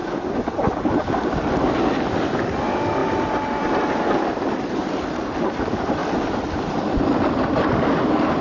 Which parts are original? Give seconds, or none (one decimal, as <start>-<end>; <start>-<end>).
0.0-3.0; 4.0-6.0; 6.9-8.4